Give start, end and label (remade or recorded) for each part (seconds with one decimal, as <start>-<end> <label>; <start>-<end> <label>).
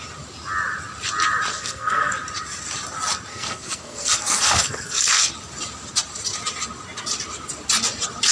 0.0-1.5 recorded; 1.5-2.1 remade; 2.1-3.3 recorded; 3.3-5.3 remade; 5.3-8.3 recorded